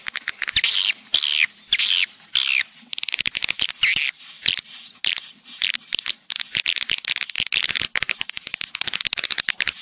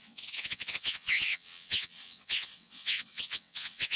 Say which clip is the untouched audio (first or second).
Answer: first